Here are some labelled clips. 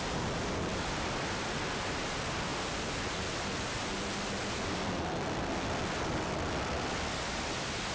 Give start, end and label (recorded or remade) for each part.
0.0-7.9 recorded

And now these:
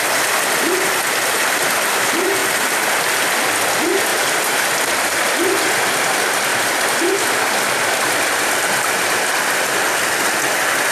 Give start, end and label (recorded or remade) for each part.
0.0-4.1 recorded; 4.1-4.9 remade; 4.9-6.5 recorded; 6.5-7.1 remade; 7.1-10.9 recorded

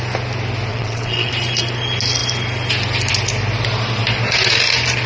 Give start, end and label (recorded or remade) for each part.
0.0-0.7 recorded; 0.7-1.3 remade; 1.3-5.1 recorded

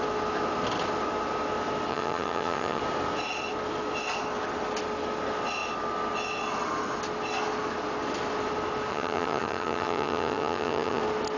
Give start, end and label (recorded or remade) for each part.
0.0-1.9 recorded; 1.9-2.8 remade; 2.8-8.9 recorded; 8.9-11.0 remade; 11.0-11.4 recorded

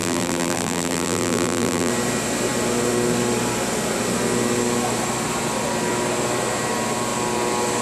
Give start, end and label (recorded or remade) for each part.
0.0-1.9 remade; 1.9-7.8 recorded